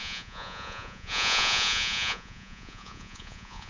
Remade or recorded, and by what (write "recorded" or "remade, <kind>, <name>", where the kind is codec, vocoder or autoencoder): remade, vocoder, Vocos